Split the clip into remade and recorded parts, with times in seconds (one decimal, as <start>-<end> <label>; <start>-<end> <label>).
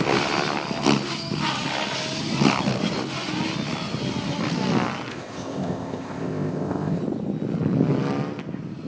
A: 0.0-5.1 recorded; 5.1-7.0 remade; 7.0-8.9 recorded